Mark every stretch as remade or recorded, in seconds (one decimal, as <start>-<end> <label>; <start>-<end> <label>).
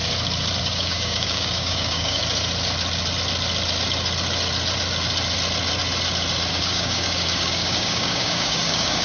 0.0-0.6 recorded; 0.6-2.2 remade; 2.2-6.5 recorded; 6.5-9.0 remade